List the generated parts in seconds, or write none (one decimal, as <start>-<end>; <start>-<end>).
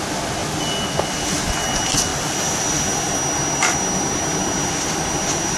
none